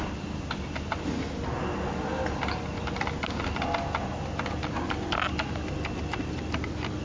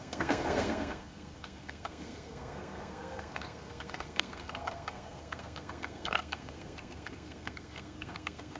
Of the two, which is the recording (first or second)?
first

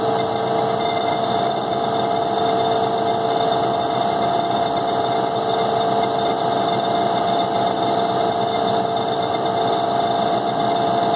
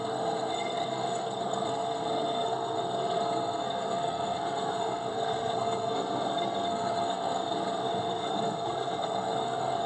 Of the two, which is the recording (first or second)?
first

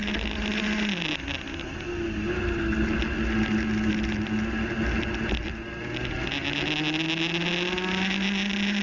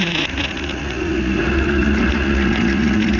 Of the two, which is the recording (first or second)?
first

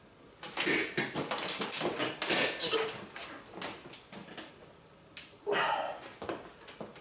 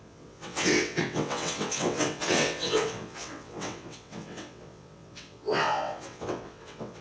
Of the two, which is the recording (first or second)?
first